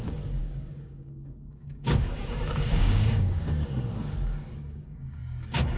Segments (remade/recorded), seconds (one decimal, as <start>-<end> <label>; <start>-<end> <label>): 0.0-5.8 remade